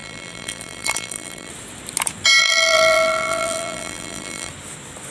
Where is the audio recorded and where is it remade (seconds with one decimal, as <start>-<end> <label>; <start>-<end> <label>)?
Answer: 0.0-1.5 remade; 1.5-2.4 recorded; 2.4-4.5 remade; 4.5-5.1 recorded